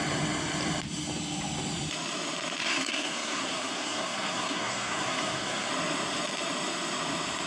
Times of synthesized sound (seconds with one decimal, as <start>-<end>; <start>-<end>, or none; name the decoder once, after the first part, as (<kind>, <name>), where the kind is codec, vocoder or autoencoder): 2.6-5.7 (codec, SNAC)